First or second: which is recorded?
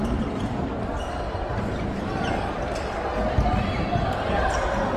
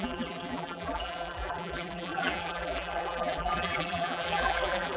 first